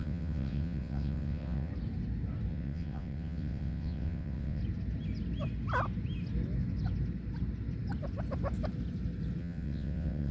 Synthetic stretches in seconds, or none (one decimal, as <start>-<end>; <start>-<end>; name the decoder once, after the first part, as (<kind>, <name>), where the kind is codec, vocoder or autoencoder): 0.0-1.7 (vocoder, WaveNeXt); 2.5-4.6; 9.4-10.3